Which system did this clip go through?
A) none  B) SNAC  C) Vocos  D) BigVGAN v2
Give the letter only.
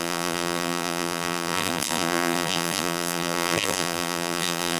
D